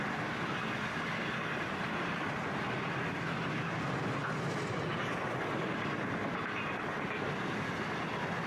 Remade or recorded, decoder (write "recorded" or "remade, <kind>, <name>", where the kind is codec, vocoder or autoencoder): recorded